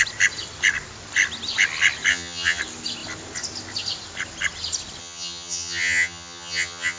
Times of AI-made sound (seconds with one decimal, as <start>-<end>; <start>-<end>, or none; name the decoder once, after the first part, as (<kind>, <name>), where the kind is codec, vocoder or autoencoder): 2.1-2.6 (vocoder, HiFi-GAN); 5.0-7.0